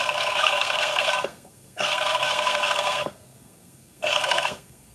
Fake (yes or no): yes